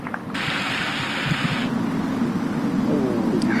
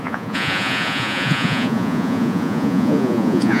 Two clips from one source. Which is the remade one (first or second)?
second